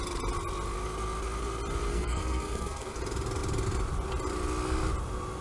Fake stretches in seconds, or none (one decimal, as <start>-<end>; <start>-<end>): 1.9-3.0